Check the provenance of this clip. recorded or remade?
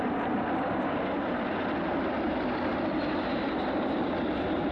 remade